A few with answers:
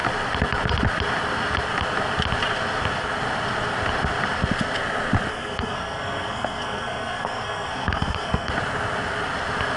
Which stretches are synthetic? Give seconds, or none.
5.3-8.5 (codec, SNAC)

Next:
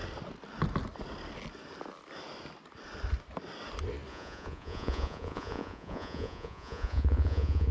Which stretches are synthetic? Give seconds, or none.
4.1-7.7 (vocoder, Vocos)